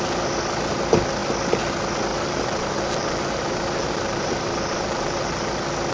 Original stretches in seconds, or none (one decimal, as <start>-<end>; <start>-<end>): 0.0-2.1; 5.5-5.9